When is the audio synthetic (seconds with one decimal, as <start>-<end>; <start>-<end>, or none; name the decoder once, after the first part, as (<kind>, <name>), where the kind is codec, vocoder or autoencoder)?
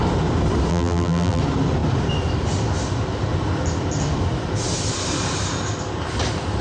0.7-1.4 (vocoder, BigVGAN v2)